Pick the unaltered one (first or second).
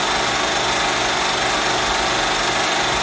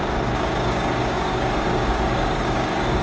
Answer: first